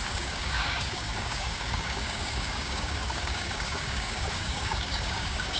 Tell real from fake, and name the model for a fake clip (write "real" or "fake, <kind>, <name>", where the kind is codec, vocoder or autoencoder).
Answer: fake, codec, DAC